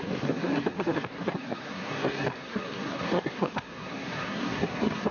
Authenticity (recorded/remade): remade